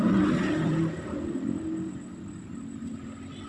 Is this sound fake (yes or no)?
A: no